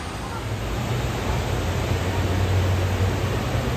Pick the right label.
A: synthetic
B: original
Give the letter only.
B